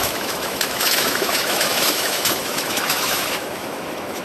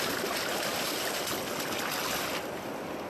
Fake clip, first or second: first